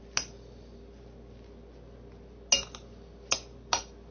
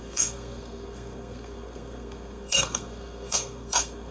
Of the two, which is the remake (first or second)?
second